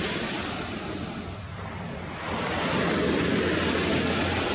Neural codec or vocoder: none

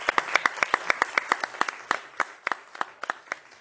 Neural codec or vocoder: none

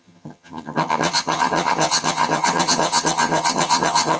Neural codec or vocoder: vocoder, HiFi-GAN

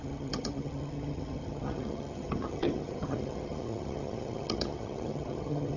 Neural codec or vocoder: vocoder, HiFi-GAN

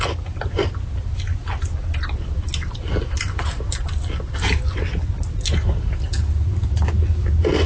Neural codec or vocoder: none